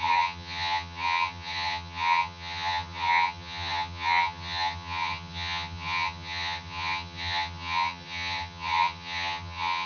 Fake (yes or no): yes